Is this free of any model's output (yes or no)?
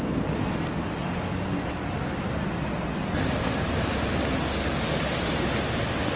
yes